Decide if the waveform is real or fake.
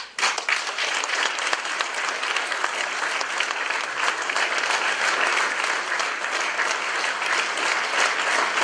real